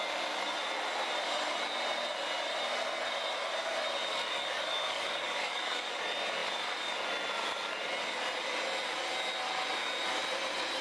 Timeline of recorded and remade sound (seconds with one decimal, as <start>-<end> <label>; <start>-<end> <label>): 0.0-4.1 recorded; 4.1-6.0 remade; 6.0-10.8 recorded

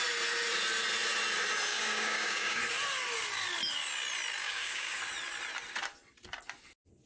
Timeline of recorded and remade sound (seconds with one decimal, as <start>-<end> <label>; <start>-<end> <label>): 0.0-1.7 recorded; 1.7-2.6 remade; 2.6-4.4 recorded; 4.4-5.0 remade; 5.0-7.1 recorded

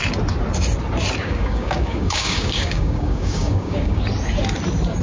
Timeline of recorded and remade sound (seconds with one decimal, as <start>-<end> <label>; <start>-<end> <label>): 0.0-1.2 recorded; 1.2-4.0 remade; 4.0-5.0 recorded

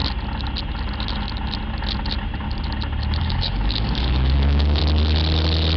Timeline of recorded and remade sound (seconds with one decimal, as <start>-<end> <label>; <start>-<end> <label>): 0.0-3.2 recorded; 3.2-4.8 remade; 4.8-5.8 recorded

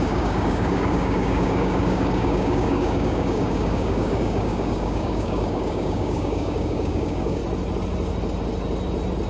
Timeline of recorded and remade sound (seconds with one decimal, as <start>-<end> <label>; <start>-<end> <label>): 0.0-7.4 remade; 7.4-9.3 recorded

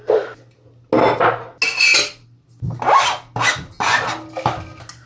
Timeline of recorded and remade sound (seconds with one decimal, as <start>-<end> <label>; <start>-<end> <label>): 0.0-5.1 recorded

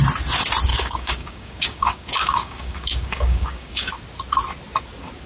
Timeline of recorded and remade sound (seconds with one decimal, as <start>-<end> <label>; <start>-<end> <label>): 0.0-0.7 recorded; 0.7-3.9 remade; 3.9-5.3 recorded

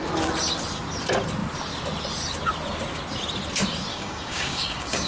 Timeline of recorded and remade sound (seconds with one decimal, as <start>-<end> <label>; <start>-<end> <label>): 0.0-3.9 recorded; 3.9-5.1 remade